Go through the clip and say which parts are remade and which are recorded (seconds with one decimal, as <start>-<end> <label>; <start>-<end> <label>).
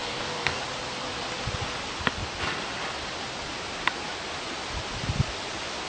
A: 0.0-0.6 remade; 0.6-5.9 recorded